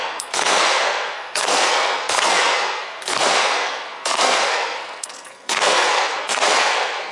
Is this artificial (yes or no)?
yes